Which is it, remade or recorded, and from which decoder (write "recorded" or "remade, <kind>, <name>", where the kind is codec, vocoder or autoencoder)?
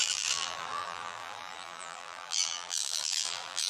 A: remade, vocoder, BigVGAN v2